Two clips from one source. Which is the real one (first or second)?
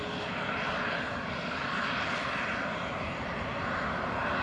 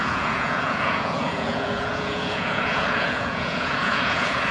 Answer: first